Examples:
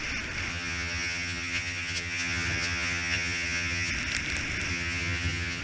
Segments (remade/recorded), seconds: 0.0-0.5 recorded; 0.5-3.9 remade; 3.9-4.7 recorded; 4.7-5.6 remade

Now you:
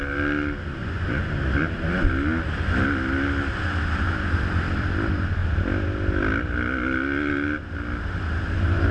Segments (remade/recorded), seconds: 0.0-0.8 recorded; 0.8-1.3 remade; 1.3-8.9 recorded